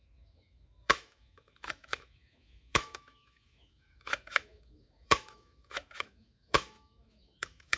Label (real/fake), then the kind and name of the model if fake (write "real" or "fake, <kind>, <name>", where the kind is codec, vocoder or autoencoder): fake, autoencoder, DAC-VAE